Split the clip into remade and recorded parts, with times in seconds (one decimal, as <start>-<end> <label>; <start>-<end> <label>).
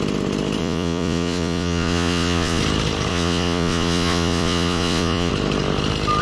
0.0-0.6 recorded; 0.6-2.6 remade; 2.6-3.1 recorded; 3.1-5.3 remade; 5.3-6.2 recorded